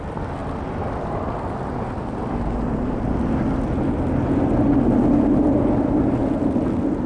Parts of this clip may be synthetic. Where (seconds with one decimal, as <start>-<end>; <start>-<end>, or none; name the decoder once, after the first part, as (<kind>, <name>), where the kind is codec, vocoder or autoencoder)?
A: none